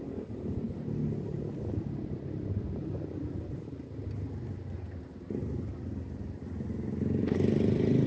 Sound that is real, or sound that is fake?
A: real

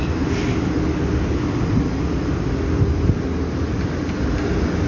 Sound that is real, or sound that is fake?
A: real